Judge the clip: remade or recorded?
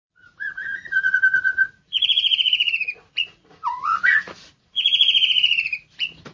remade